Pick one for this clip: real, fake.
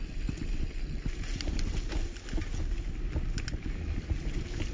real